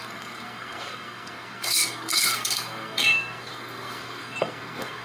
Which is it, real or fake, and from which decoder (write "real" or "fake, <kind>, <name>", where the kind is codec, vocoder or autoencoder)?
fake, codec, SNAC